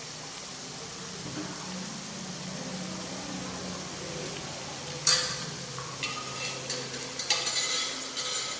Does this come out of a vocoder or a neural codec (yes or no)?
no